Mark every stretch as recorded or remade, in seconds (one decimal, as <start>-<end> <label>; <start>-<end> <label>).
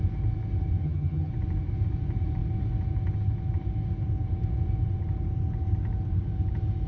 0.0-0.8 recorded; 0.8-1.3 remade; 1.3-6.9 recorded